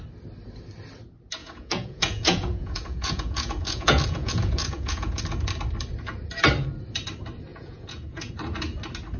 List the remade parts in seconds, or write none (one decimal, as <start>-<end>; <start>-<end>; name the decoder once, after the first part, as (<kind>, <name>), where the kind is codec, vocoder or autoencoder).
1.4-5.2 (vocoder, Vocos); 7.5-8.3